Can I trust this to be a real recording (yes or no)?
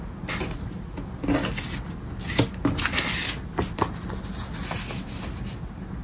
yes